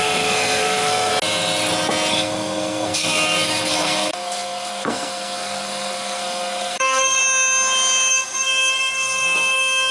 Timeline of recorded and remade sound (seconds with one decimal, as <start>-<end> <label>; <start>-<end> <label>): 0.0-1.1 remade; 1.1-2.1 recorded; 2.1-7.2 remade; 7.2-8.1 recorded; 8.1-9.9 remade